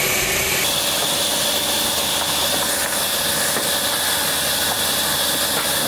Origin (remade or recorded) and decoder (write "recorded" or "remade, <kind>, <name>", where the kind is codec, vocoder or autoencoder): recorded